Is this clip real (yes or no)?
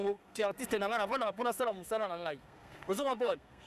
no